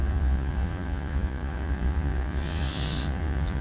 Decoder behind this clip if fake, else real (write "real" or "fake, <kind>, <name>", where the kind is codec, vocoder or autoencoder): fake, vocoder, Vocos